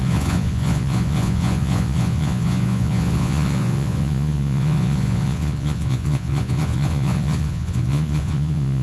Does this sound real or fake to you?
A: fake